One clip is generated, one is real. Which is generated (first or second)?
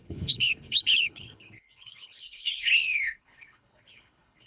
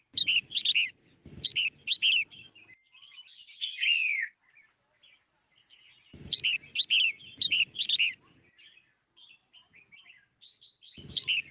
first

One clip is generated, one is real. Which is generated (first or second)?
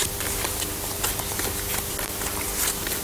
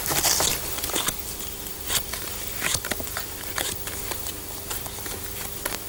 second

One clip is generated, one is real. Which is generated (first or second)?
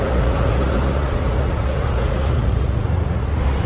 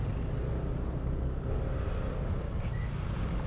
first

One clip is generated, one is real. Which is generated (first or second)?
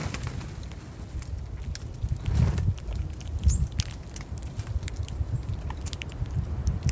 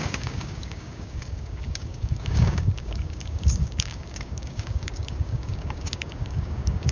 second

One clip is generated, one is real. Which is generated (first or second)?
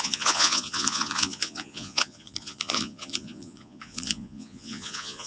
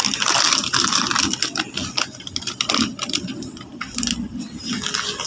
first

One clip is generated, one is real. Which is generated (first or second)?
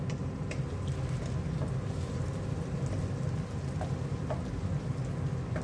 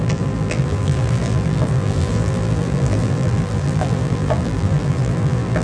second